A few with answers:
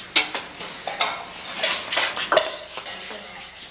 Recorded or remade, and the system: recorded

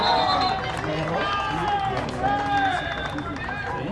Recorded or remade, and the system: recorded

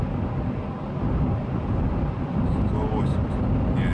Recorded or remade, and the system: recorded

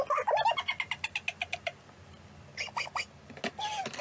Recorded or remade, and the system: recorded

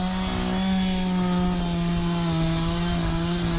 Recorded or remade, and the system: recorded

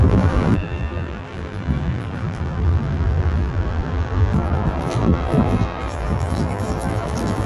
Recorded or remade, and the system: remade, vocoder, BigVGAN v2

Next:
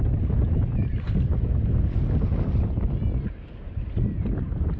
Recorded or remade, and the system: recorded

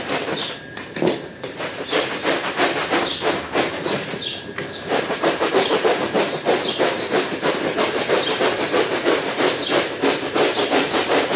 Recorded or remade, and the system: remade, vocoder, BigVGAN v2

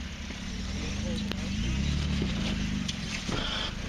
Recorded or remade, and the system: recorded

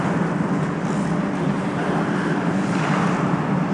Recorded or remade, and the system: remade, vocoder, BigVGAN v2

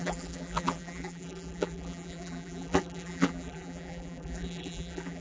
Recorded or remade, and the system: remade, vocoder, BigVGAN v2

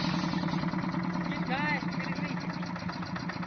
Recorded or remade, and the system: recorded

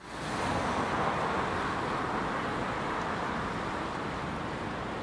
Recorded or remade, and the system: recorded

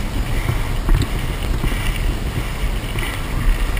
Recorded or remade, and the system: recorded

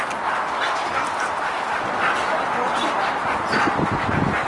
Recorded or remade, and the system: recorded